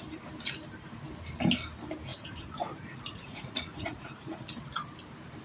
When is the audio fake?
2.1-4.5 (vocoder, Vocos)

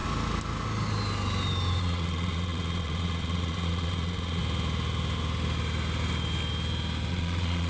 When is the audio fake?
1.8-4.4 (vocoder, Vocos); 7.1-7.7

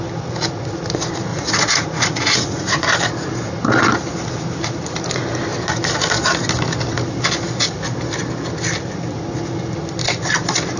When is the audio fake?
1.3-2.9 (vocoder, Vocos)

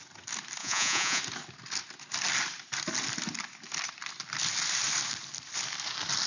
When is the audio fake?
0.6-1.2 (vocoder, Vocos)